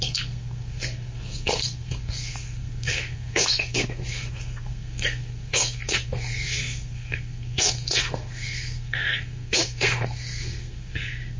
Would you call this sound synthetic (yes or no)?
yes